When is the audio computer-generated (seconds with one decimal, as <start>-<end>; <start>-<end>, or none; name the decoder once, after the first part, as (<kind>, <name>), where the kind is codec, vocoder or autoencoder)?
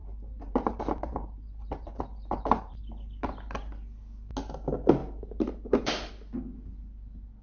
0.0-2.8 (vocoder, BigVGAN v2); 5.0-6.1